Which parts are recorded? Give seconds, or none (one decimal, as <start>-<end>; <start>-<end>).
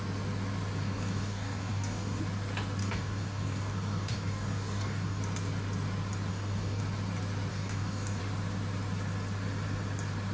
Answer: 0.0-0.8; 2.2-2.8; 5.2-6.3; 6.8-7.5; 8.2-10.3